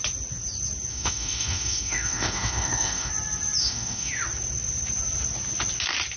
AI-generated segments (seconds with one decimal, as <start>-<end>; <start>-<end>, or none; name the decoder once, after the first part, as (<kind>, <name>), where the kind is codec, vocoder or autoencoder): 0.9-3.1 (autoencoder, DAC-VAE); 3.6-4.1